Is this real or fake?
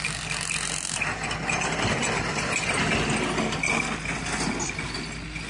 real